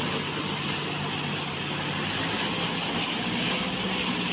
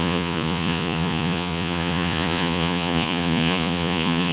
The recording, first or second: first